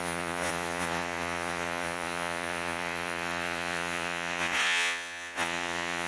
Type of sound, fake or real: fake